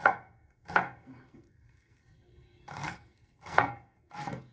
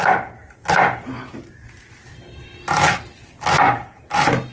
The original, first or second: second